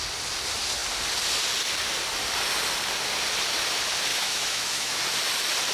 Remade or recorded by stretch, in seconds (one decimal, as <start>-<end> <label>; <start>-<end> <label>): 0.0-4.1 recorded; 4.1-5.0 remade; 5.0-5.7 recorded